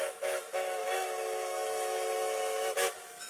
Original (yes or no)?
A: no